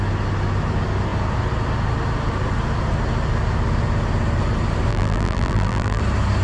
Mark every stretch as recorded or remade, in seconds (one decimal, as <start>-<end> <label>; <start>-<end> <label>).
0.0-4.9 recorded; 4.9-6.0 remade; 6.0-6.4 recorded